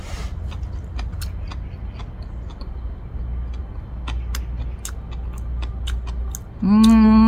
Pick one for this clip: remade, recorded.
recorded